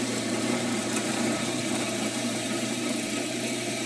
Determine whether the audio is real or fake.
fake